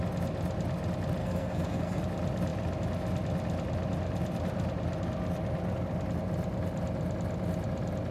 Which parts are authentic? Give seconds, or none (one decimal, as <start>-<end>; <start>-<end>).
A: 0.0-1.2; 2.0-8.1